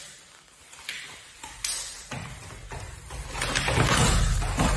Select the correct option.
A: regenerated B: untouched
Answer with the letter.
B